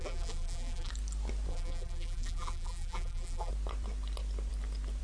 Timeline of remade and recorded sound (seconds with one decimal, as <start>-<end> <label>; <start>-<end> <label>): 0.0-0.9 remade; 0.9-1.5 recorded; 1.5-3.5 remade; 3.5-5.0 recorded